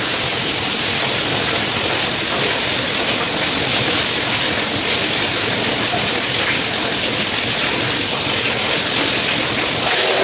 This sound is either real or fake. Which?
real